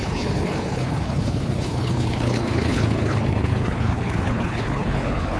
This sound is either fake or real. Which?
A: fake